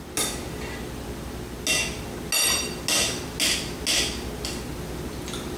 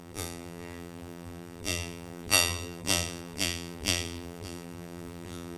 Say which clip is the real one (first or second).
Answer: first